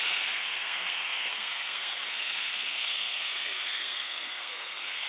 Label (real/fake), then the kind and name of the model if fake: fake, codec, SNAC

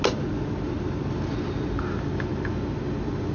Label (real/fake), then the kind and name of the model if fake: real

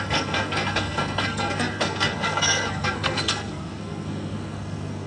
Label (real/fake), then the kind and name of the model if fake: fake, codec, SNAC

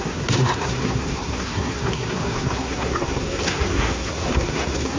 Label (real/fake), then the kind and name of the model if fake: fake, codec, SNAC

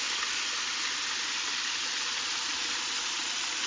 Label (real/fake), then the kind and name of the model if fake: real